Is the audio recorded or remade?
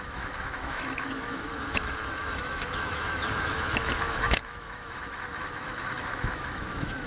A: remade